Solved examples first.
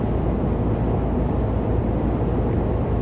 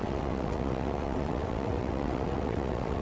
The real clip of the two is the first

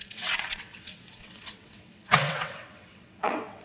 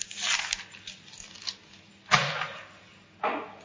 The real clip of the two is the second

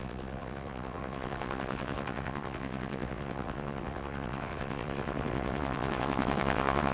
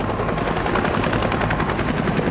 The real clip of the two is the second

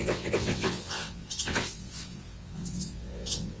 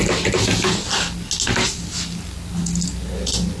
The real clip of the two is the second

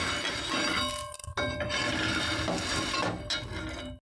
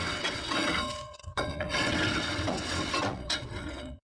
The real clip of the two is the first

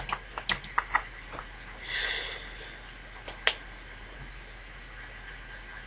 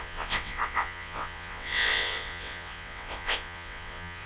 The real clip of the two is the first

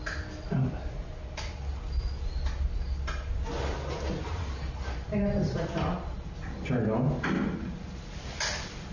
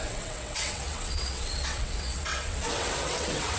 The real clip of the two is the first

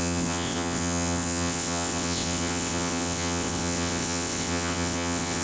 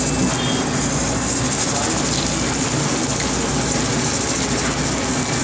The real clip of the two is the second